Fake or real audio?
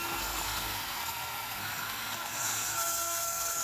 fake